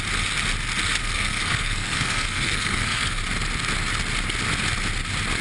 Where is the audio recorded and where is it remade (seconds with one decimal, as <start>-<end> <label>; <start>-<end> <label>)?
0.0-1.0 recorded; 1.0-3.2 remade; 3.2-5.4 recorded